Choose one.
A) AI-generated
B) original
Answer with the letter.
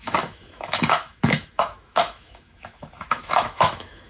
A